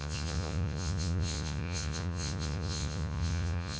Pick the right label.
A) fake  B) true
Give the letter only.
A